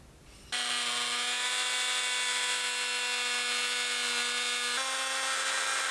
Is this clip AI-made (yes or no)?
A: no